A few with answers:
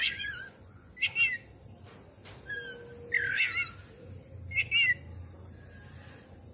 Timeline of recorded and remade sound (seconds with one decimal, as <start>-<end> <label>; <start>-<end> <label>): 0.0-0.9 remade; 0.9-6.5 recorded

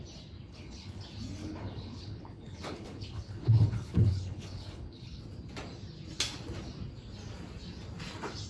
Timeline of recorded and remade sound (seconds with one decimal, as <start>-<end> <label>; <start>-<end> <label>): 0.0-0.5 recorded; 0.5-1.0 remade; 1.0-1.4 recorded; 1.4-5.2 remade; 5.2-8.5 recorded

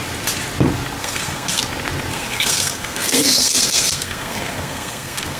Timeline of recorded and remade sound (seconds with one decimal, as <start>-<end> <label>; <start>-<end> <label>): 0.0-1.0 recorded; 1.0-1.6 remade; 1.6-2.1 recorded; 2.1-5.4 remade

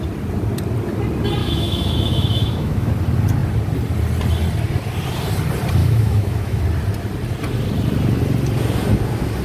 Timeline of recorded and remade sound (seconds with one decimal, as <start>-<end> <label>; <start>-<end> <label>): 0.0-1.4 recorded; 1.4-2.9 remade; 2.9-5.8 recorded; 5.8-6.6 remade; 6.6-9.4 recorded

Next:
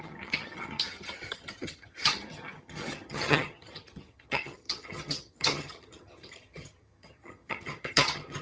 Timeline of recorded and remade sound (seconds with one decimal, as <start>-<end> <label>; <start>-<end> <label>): 0.0-8.4 remade

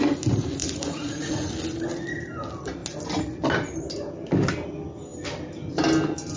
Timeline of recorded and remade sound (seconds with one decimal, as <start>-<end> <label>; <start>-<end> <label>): 0.0-0.6 recorded; 0.6-1.5 remade; 1.5-6.4 recorded

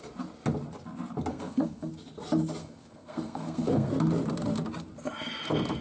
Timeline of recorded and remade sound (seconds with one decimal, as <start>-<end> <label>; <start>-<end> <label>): 0.0-1.3 recorded; 1.3-1.9 remade; 1.9-2.6 recorded; 2.6-3.9 remade; 3.9-5.8 recorded